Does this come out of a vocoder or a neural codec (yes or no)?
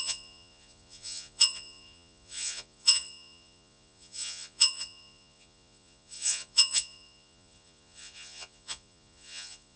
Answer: yes